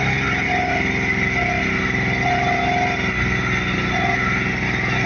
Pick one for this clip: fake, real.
real